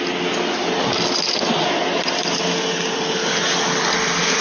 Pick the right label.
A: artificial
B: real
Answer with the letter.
B